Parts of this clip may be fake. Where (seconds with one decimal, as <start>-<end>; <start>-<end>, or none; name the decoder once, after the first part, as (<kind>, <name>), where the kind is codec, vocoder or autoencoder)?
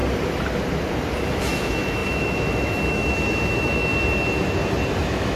1.3-3.9 (autoencoder, DAC-VAE); 5.0-5.4